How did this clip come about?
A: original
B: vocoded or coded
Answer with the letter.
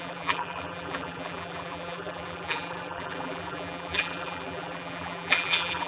B